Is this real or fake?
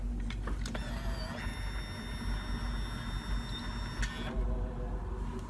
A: real